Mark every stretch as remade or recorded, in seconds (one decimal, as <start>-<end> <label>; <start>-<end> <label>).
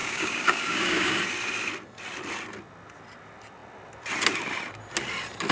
0.0-1.2 remade; 1.2-5.5 recorded